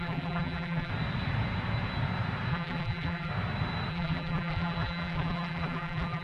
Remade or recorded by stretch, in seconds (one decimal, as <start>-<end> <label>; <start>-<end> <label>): 0.0-0.9 remade; 0.9-2.5 recorded; 2.5-3.3 remade; 3.3-3.9 recorded; 3.9-6.2 remade